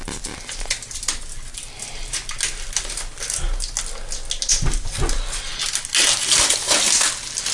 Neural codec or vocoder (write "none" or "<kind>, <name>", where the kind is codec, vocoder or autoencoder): none